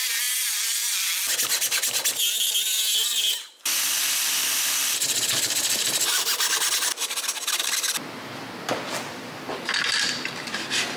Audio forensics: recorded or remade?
recorded